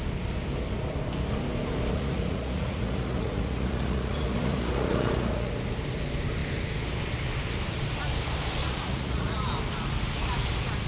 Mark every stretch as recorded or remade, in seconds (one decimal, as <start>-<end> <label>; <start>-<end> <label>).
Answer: 0.0-1.9 recorded; 1.9-5.5 remade; 5.5-8.6 recorded; 8.6-9.5 remade; 9.5-10.9 recorded